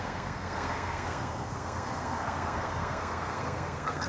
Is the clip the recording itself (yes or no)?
no